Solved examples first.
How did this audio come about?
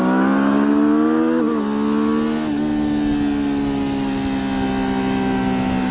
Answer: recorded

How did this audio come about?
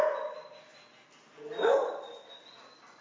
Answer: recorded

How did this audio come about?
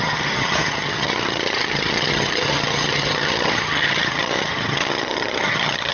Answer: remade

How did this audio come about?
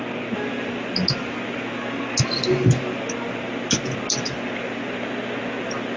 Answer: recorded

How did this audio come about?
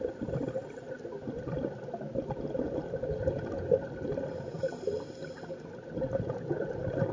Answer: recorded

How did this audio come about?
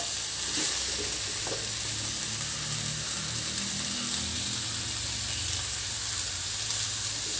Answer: recorded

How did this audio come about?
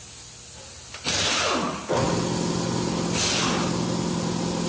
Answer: recorded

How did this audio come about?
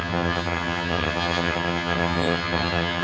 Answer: remade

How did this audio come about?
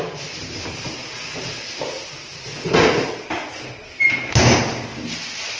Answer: recorded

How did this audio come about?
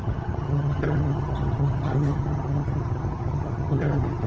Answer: remade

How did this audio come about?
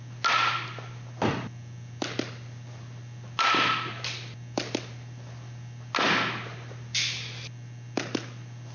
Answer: recorded